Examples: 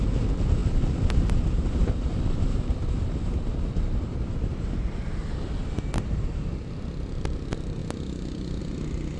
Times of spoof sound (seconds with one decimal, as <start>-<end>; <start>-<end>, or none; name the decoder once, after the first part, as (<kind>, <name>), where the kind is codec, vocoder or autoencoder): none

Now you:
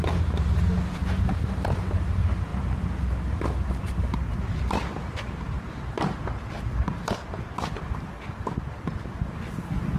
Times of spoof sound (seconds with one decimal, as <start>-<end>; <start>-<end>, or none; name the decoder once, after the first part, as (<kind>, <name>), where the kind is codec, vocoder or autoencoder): none

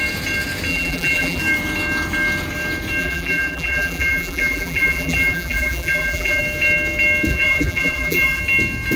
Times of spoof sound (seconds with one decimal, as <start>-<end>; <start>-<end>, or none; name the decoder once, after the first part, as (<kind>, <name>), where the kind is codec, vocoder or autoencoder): 0.7-1.4 (vocoder, BigVGAN v2); 3.0-6.4; 7.3-8.4

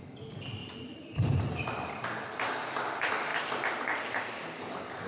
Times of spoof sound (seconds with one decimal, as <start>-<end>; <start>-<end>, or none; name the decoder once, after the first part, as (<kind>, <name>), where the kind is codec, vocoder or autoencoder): 0.6-2.1 (vocoder, BigVGAN v2)

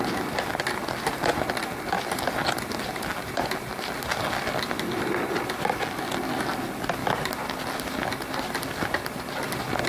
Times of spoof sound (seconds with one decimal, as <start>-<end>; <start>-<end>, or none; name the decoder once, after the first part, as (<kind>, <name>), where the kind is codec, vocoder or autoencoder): none